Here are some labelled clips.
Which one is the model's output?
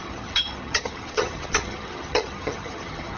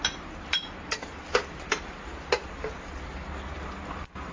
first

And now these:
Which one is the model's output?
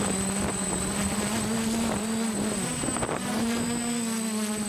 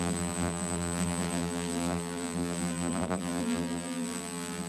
second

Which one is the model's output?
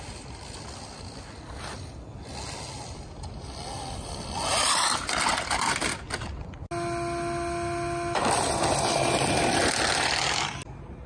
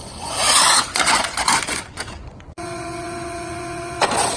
second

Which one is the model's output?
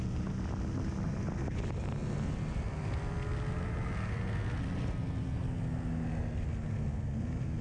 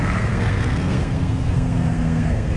second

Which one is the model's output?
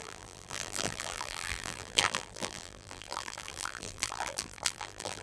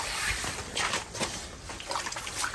first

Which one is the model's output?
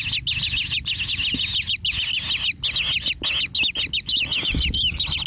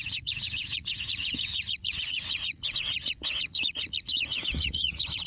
second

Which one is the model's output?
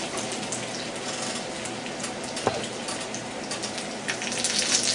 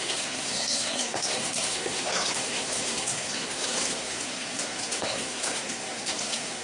second